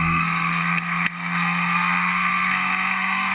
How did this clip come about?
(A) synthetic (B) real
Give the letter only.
A